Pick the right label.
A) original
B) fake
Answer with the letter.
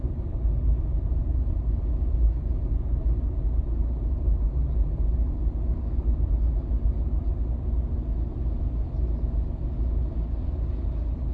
A